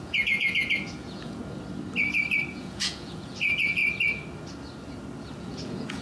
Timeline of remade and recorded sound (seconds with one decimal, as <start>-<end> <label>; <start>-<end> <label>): 0.0-1.4 remade; 1.4-2.5 recorded; 2.5-3.8 remade; 3.8-5.4 recorded; 5.4-6.0 remade